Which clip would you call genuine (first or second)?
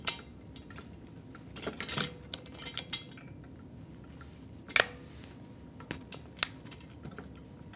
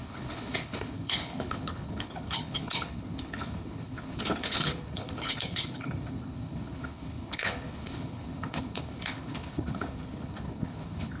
first